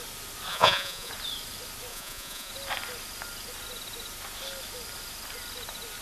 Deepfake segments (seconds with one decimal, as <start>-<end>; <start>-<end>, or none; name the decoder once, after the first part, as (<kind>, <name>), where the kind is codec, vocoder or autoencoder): 0.5-1.1 (vocoder, Vocos); 1.9-2.5

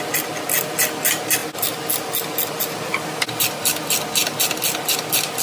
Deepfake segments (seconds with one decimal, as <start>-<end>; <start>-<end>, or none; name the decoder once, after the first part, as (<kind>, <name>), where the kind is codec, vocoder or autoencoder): none

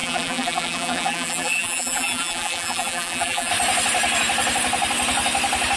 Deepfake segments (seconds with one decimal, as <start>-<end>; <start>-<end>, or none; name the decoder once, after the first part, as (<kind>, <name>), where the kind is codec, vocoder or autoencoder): 0.0-3.5 (vocoder, BigVGAN v2)